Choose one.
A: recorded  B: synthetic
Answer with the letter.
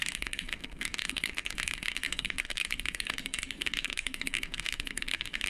B